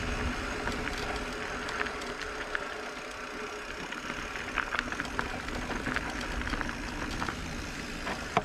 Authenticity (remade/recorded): recorded